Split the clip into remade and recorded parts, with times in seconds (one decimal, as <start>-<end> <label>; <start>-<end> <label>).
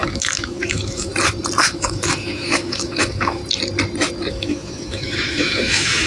0.0-1.1 remade; 1.1-1.6 recorded; 1.6-3.4 remade; 3.4-4.3 recorded; 4.3-6.1 remade